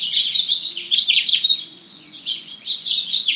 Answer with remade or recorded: remade